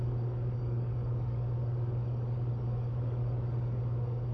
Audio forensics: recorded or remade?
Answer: remade